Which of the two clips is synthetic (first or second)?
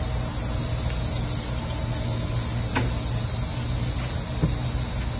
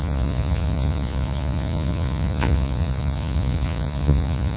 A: second